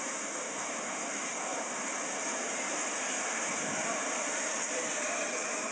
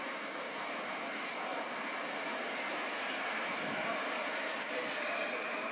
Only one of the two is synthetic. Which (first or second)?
first